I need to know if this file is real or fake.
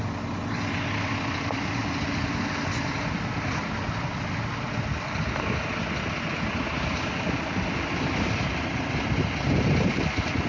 real